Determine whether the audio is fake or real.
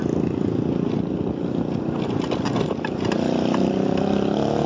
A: real